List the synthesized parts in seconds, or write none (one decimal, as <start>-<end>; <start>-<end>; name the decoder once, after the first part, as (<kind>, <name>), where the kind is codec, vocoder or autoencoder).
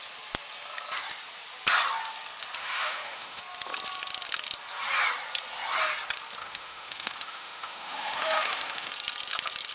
2.6-3.4 (autoencoder, DAC-VAE); 6.4-8.9